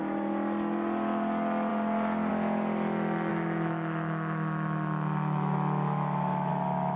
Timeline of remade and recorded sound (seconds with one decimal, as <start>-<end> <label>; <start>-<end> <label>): 0.0-3.3 recorded; 3.3-6.5 remade; 6.5-7.0 recorded

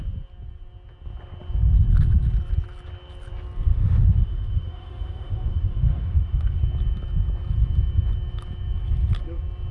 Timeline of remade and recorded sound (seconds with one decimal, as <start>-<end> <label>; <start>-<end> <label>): 0.0-3.7 recorded; 3.7-6.6 remade; 6.6-9.7 recorded

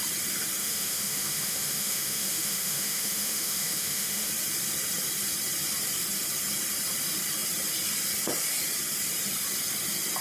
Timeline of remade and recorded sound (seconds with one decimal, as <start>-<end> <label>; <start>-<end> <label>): 0.0-0.6 recorded; 0.6-4.3 remade; 4.3-10.2 recorded

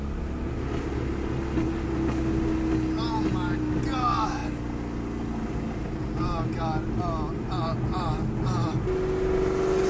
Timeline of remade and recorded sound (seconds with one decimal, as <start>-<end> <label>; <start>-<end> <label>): 0.0-9.9 recorded

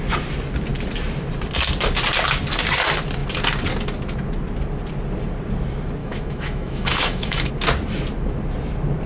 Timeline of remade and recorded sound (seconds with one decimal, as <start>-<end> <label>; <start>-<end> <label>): 0.0-6.0 recorded; 6.0-7.5 remade; 7.5-9.1 recorded

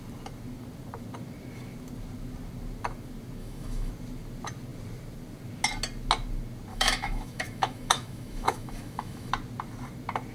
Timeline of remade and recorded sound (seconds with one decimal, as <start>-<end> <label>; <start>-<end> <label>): 0.0-3.4 recorded; 3.4-3.9 remade; 3.9-6.7 recorded; 6.7-9.3 remade; 9.3-10.3 recorded